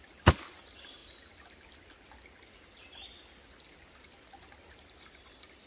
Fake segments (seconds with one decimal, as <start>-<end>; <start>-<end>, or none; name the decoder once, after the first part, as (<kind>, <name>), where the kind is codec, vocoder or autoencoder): none

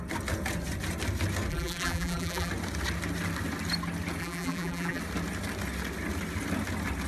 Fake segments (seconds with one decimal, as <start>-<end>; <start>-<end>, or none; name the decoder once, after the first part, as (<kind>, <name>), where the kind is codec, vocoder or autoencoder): 1.5-2.5 (vocoder, BigVGAN v2); 4.2-5.0

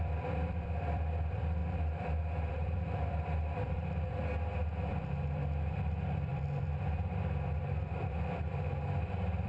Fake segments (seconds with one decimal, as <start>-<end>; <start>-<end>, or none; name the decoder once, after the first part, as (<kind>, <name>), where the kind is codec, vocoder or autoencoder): 0.0-4.2 (vocoder, BigVGAN v2); 4.9-9.5